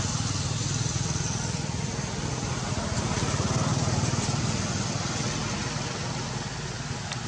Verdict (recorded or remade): recorded